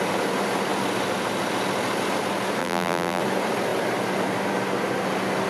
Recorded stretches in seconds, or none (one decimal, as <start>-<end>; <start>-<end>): 0.0-2.6; 3.2-5.5

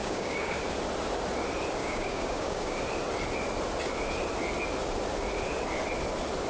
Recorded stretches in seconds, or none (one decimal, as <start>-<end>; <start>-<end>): 0.6-1.8; 2.8-6.5